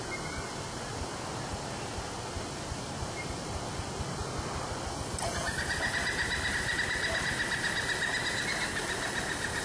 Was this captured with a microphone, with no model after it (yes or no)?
yes